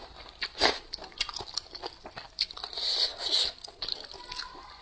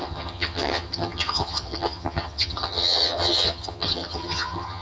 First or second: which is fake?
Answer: second